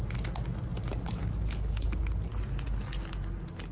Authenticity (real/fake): real